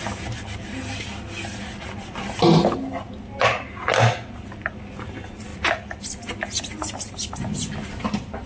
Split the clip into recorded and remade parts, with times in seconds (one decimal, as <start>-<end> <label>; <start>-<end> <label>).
0.0-8.5 recorded